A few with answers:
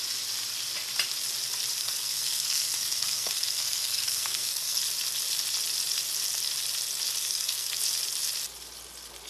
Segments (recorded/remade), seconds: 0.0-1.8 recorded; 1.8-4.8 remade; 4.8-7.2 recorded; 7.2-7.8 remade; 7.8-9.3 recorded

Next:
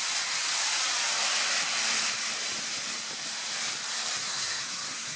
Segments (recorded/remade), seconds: 0.0-4.3 recorded; 4.3-5.2 remade